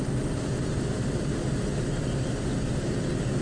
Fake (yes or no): no